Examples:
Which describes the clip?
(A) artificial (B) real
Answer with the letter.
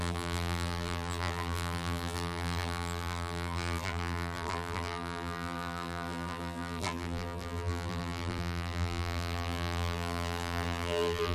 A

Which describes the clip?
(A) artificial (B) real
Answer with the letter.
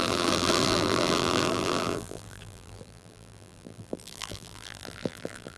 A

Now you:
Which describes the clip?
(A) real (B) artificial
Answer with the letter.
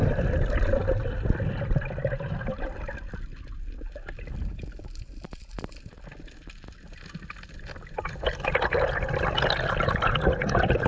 A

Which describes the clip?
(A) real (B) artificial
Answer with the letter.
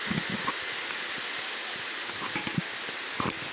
A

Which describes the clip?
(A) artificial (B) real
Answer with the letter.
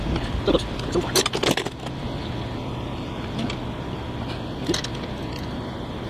B